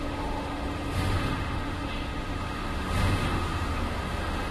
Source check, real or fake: fake